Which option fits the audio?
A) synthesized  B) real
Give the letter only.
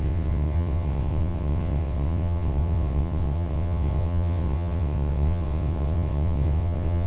A